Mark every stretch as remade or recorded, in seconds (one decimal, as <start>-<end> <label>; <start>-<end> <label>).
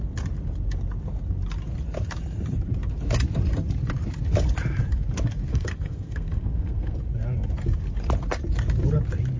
0.0-5.5 recorded; 5.5-7.0 remade; 7.0-9.4 recorded